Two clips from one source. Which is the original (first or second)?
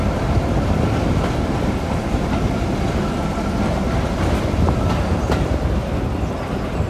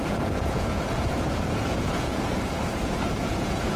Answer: first